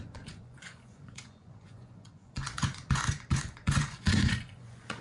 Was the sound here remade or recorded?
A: remade